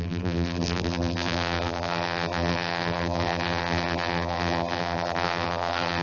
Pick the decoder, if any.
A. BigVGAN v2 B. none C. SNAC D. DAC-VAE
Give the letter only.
A